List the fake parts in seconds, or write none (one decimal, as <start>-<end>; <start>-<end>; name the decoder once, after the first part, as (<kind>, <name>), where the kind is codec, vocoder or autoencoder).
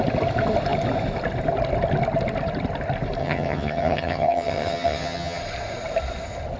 3.2-5.4 (vocoder, HiFi-GAN)